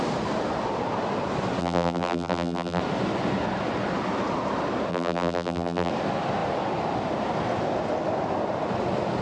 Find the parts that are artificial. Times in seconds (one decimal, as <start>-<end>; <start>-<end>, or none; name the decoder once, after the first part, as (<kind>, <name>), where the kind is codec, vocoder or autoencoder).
1.6-2.8 (vocoder, BigVGAN v2); 4.9-5.9